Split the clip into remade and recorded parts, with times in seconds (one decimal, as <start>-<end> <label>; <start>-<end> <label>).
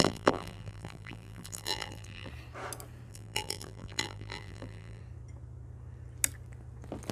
0.0-2.3 remade; 2.3-3.1 recorded; 3.1-5.0 remade; 5.0-7.1 recorded